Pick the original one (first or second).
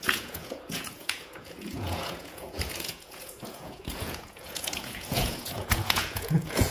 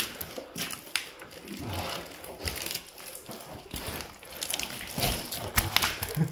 second